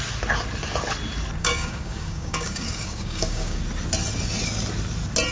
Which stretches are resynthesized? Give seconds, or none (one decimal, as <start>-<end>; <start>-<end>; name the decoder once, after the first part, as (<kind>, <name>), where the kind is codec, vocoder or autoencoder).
1.4-3.6 (codec, DAC)